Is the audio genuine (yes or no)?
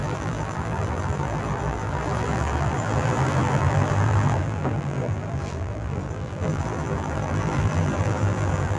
no